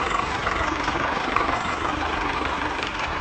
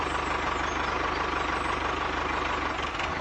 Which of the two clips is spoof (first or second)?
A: first